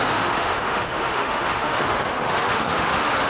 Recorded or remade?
remade